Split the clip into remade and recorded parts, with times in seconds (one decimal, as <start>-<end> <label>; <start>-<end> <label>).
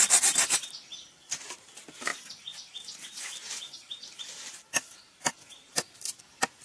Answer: 0.0-6.6 recorded